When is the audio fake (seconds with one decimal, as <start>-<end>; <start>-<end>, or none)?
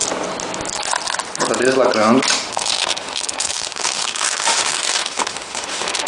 2.5-6.1